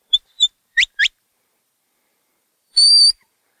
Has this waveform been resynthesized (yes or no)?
yes